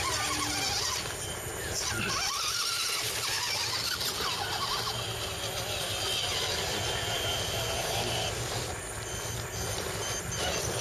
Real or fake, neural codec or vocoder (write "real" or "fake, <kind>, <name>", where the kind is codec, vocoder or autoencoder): real